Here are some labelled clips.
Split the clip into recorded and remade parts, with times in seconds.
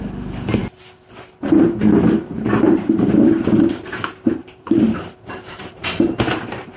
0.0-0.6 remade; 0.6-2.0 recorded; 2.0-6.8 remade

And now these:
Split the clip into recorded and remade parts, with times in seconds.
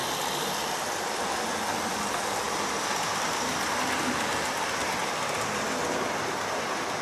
0.0-7.0 recorded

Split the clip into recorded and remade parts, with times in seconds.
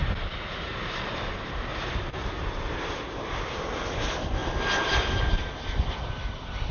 0.0-3.5 remade; 3.5-6.7 recorded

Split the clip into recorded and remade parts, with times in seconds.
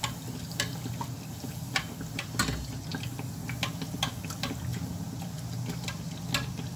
0.0-6.8 recorded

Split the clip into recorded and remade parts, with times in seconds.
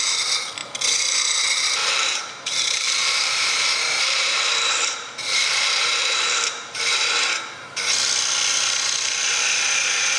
0.0-1.8 recorded; 1.8-6.9 remade; 6.9-10.2 recorded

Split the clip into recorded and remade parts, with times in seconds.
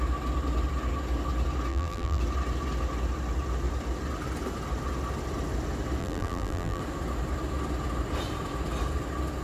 0.0-1.7 recorded; 1.7-2.2 remade; 2.2-6.0 recorded; 6.0-6.8 remade; 6.8-9.4 recorded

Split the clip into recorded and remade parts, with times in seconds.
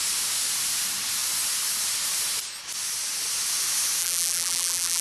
0.0-4.0 recorded; 4.0-5.0 remade